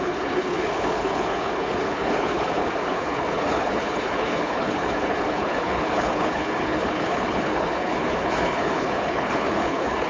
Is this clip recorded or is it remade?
remade